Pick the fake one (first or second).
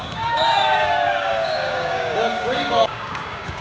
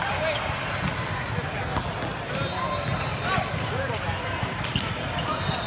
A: first